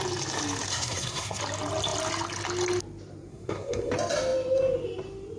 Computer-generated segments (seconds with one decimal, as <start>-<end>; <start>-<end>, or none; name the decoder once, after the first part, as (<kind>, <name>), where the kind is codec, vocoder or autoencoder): 0.7-1.4 (codec, SNAC); 3.3-3.9